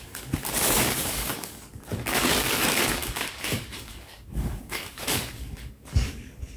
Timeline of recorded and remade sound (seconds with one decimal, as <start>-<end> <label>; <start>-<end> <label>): 0.0-6.6 remade